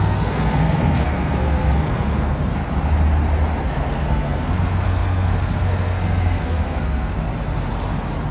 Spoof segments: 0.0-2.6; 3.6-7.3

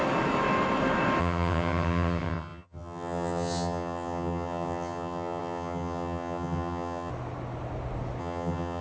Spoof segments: 1.2-7.1; 8.2-8.8

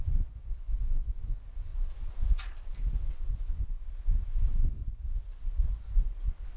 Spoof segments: 0.0-1.7; 4.2-4.8

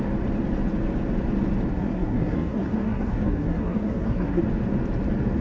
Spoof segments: 1.7-4.4

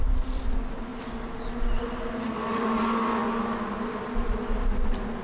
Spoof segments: none

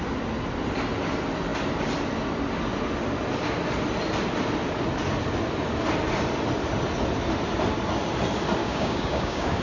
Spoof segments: 8.6-9.6

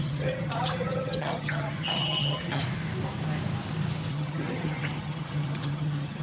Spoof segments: 0.0-2.6; 4.1-6.2